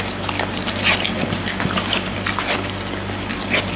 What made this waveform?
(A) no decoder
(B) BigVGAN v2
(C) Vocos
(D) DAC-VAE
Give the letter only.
A